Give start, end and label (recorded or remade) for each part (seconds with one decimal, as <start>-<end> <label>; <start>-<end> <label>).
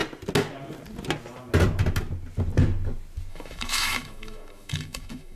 0.0-3.3 recorded; 3.3-5.4 remade